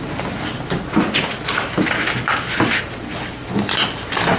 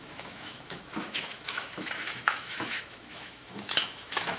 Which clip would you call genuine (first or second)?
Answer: first